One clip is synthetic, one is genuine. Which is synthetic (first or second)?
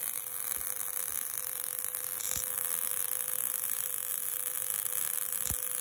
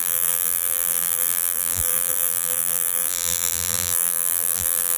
second